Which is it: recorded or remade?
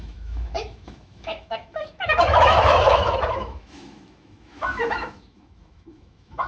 remade